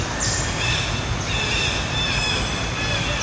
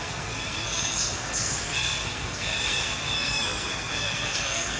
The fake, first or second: second